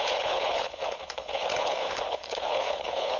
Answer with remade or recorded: remade